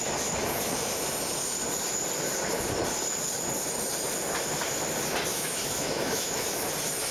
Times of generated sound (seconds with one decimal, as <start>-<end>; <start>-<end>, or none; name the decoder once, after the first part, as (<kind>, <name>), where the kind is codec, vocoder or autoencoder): 5.3-6.6 (autoencoder, DAC-VAE)